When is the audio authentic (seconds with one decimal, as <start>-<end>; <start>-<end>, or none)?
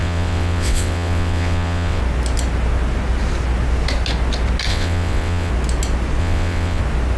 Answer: 2.0-4.7; 5.5-6.2; 6.8-7.2